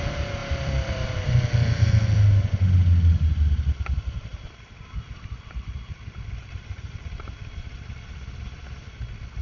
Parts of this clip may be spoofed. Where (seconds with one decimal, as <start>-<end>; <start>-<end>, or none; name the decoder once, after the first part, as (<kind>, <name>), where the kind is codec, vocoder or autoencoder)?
0.4-2.3 (vocoder, BigVGAN v2); 4.3-7.1